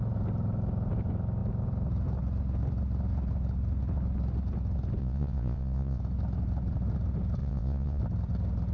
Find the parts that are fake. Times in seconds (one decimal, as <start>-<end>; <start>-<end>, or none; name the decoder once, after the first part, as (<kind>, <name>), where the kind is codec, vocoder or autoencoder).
5.0-6.0 (vocoder, Vocos); 7.4-8.0